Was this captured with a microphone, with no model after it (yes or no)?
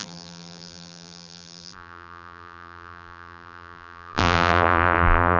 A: no